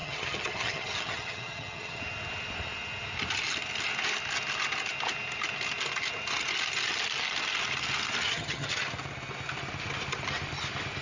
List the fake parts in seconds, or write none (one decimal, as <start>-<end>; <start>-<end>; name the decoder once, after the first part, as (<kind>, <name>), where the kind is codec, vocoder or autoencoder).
0.0-2.0 (vocoder, HiFi-GAN); 8.2-8.7